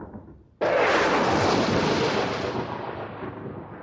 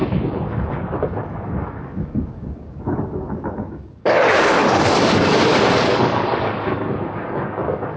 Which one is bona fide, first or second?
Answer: first